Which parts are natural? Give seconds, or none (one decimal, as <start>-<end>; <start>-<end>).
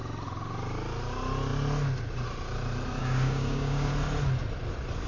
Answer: 0.0-3.0; 3.9-5.1